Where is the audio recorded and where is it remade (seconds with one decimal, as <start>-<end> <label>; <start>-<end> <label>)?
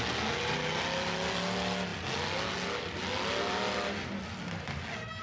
0.0-5.2 recorded